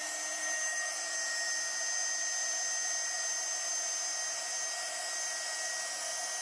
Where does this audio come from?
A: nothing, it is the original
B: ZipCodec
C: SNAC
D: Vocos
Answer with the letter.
A